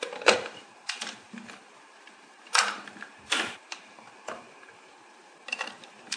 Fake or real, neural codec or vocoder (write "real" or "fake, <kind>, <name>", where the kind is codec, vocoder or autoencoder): fake, vocoder, BigVGAN v2